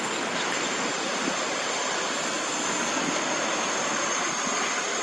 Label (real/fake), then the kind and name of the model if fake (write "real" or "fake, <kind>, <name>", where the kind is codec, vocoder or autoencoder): real